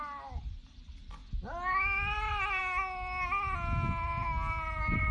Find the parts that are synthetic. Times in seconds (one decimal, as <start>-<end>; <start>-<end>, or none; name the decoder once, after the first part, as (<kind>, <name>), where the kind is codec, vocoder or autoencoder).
none